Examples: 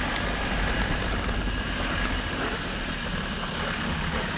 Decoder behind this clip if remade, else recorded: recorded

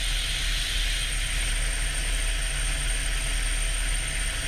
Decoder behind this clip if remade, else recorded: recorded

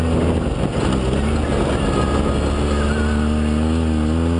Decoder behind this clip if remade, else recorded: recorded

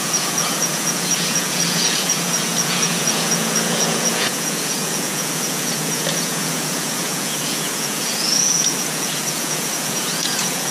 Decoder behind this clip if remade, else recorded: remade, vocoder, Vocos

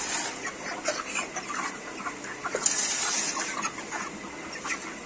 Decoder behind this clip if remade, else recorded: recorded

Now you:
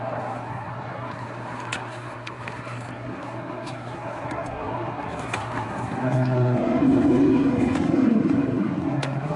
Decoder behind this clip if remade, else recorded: remade, codec, SNAC